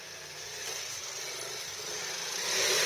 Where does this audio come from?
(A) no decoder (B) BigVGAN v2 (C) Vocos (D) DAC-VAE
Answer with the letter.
A